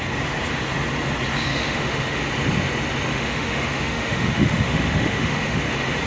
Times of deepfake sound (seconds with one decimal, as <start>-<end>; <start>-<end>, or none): 1.5-2.2; 3.1-5.6